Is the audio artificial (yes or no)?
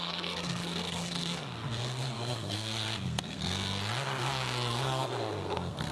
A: yes